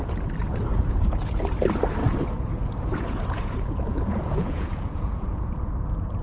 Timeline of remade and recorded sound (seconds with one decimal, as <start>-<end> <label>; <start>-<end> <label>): 0.0-0.7 recorded; 0.7-1.4 remade; 1.4-2.0 recorded; 2.0-5.7 remade; 5.7-6.2 recorded